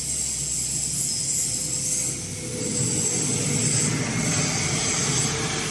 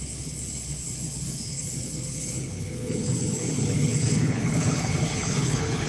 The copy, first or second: second